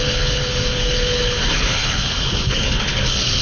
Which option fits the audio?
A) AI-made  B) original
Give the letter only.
A